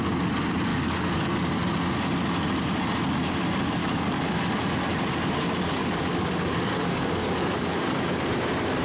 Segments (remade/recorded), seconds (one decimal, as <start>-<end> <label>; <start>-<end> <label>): 0.0-0.7 recorded; 0.7-1.5 remade; 1.5-3.8 recorded; 3.8-4.5 remade; 4.5-5.8 recorded; 5.8-8.2 remade; 8.2-8.8 recorded